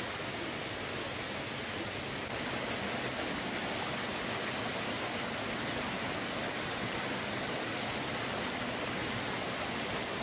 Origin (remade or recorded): recorded